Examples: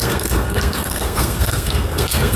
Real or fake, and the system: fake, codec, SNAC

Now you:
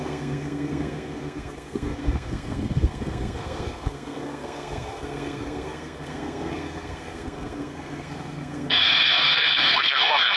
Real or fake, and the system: fake, codec, SNAC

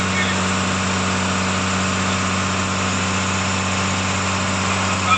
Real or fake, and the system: real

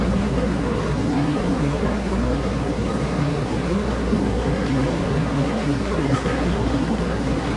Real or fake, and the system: fake, codec, SNAC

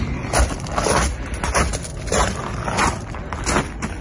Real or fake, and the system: real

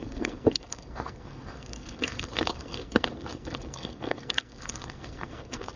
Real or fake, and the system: fake, codec, SNAC